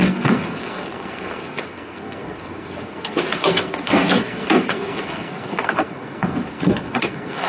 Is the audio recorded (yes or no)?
no